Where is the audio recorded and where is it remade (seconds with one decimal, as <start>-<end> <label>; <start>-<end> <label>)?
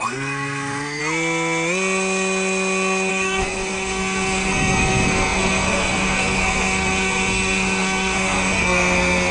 0.0-1.0 remade; 1.0-3.1 recorded; 3.1-9.3 remade